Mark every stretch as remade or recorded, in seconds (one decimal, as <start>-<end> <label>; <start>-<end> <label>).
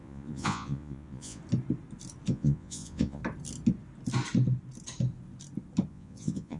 0.0-1.4 remade; 1.4-2.3 recorded; 2.3-3.2 remade; 3.2-5.9 recorded; 5.9-6.6 remade